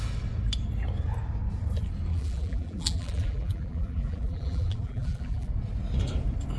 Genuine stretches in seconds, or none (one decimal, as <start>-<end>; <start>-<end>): 0.0-2.1; 5.5-6.6